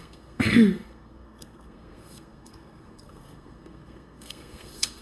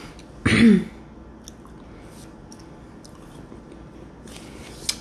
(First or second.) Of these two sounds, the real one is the second